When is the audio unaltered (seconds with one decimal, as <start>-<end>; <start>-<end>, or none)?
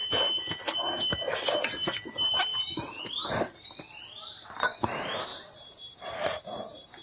0.0-1.0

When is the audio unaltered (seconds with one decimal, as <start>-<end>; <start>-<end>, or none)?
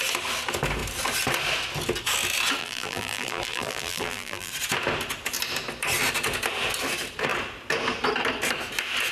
0.0-2.6; 4.5-9.1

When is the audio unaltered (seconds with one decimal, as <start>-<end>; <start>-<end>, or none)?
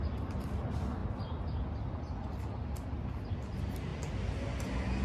0.0-5.0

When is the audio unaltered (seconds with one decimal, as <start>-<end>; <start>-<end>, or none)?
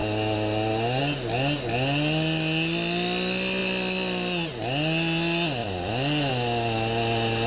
0.0-5.6; 6.3-7.5